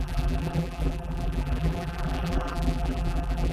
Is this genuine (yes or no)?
no